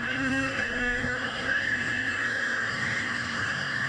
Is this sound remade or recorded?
remade